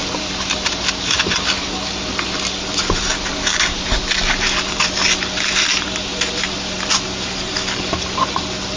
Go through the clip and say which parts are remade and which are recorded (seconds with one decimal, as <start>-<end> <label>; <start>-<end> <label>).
0.0-8.8 remade